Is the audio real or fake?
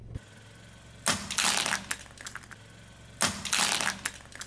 real